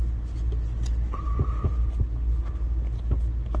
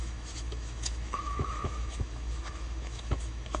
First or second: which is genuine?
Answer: first